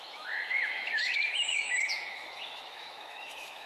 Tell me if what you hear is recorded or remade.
remade